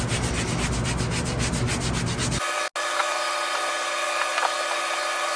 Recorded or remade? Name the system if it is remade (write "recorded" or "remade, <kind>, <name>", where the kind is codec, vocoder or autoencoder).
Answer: recorded